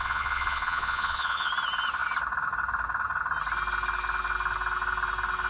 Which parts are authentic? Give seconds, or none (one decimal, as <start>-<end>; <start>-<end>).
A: 1.5-5.5